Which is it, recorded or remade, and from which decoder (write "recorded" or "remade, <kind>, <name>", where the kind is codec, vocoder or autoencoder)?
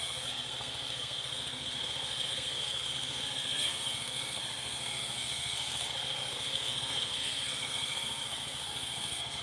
remade, codec, SNAC